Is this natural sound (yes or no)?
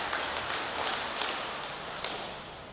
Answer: yes